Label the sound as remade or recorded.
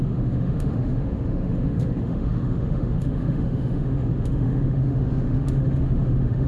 remade